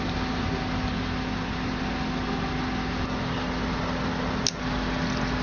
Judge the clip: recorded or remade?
recorded